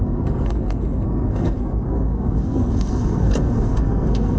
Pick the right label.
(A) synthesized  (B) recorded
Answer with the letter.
A